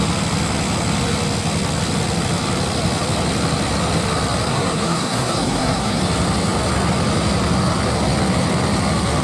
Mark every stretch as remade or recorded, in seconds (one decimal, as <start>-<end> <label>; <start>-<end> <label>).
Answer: 0.0-4.5 recorded; 4.5-6.0 remade; 6.0-9.2 recorded